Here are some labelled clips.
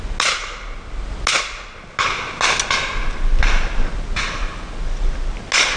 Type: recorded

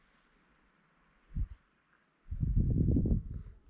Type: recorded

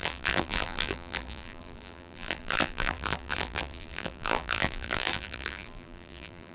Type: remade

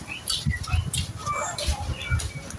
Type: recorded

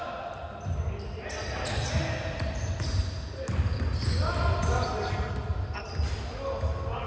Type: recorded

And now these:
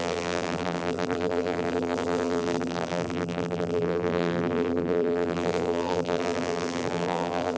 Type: remade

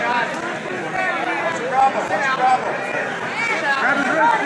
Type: recorded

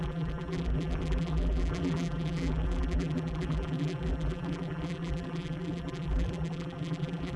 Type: remade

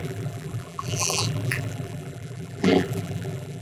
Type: remade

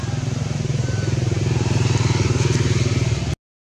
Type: recorded